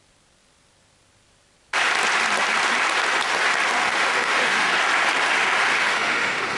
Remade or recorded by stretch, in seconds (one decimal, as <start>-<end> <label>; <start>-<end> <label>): 0.0-3.8 recorded; 3.8-4.7 remade; 4.7-5.8 recorded; 5.8-6.6 remade